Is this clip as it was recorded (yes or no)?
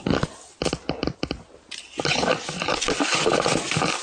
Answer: yes